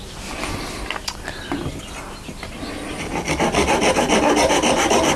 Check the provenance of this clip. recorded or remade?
recorded